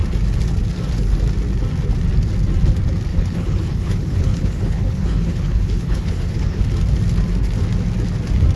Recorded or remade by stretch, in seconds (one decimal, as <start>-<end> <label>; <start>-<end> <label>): 0.0-3.1 recorded; 3.1-6.6 remade; 6.6-8.6 recorded